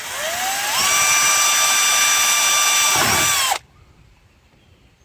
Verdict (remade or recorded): recorded